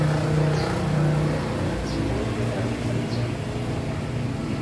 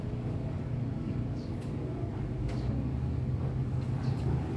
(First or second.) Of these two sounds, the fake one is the second